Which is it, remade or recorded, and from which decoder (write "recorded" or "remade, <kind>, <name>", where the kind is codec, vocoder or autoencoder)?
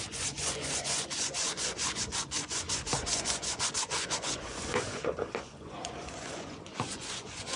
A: remade, vocoder, Vocos